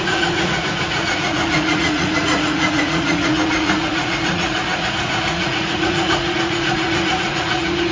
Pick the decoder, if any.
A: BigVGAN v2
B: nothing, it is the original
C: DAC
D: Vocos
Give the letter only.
D